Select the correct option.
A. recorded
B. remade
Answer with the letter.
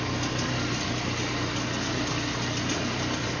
A